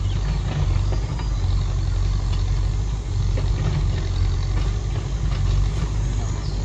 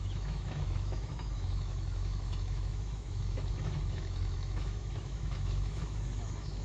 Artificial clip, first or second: second